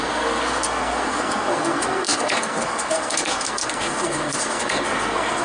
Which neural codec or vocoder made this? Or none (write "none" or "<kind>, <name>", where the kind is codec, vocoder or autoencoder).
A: codec, SNAC